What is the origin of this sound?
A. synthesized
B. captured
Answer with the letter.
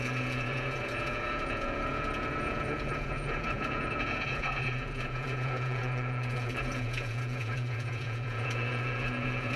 A